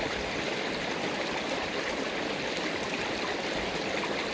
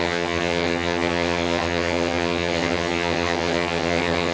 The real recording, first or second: first